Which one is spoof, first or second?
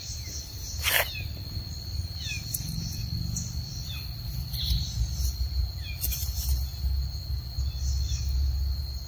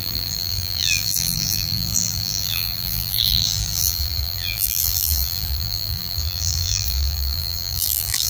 second